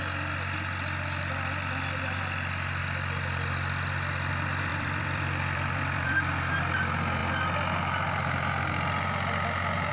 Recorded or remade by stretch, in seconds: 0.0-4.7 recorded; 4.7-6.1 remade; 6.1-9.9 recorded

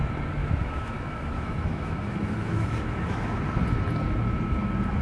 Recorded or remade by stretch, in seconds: 0.0-0.4 recorded; 0.4-3.4 remade; 3.4-5.0 recorded

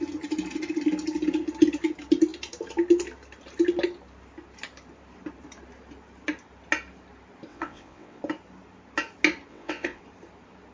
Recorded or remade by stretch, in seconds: 0.0-7.5 recorded; 7.5-8.2 remade; 8.2-9.5 recorded; 9.5-10.0 remade; 10.0-10.7 recorded

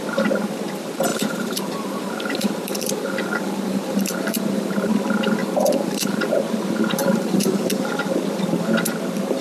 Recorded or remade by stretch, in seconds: 0.0-1.1 recorded; 1.1-4.9 remade; 4.9-5.4 recorded; 5.4-6.4 remade; 6.4-7.0 recorded; 7.0-7.8 remade; 7.8-9.4 recorded

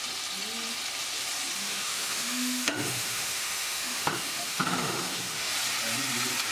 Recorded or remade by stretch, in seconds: 0.0-1.6 recorded; 1.6-5.5 remade; 5.5-6.5 recorded